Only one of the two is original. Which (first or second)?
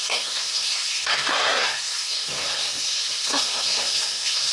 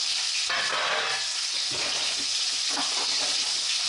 second